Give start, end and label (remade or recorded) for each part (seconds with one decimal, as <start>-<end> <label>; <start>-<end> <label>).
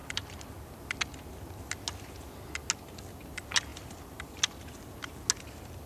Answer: 0.0-0.8 remade; 0.8-3.7 recorded; 3.7-4.7 remade; 4.7-5.9 recorded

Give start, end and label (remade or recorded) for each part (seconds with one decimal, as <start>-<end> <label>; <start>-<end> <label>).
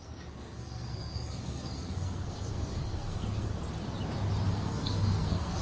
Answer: 0.0-3.5 remade; 3.5-4.5 recorded; 4.5-5.6 remade